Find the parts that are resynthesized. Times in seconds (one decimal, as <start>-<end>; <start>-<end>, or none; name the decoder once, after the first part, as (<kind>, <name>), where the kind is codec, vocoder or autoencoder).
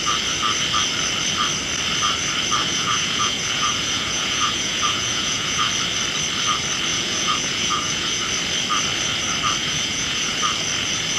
2.6-5.7 (vocoder, Vocos); 6.9-8.2; 9.6-10.4